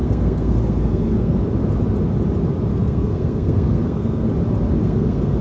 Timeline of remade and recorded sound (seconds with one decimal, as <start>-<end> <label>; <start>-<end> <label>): 0.0-1.4 remade; 1.4-2.7 recorded; 2.7-4.3 remade; 4.3-4.8 recorded; 4.8-5.4 remade

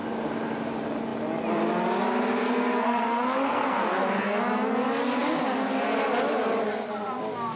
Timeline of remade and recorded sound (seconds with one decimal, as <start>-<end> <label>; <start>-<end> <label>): 0.0-2.4 recorded; 2.4-4.4 remade; 4.4-7.6 recorded